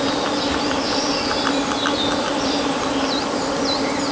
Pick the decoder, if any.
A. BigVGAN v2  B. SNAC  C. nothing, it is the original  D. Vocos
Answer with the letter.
C